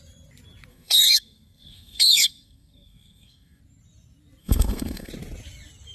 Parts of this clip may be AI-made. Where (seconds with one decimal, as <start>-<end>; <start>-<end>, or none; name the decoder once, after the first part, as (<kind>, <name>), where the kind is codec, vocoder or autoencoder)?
0.7-3.6 (codec, SNAC); 4.4-5.1